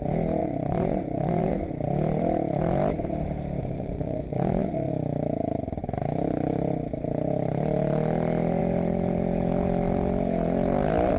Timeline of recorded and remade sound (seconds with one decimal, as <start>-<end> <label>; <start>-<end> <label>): 0.0-0.4 recorded; 0.4-1.7 remade; 1.7-3.6 recorded; 3.6-4.9 remade; 4.9-11.2 recorded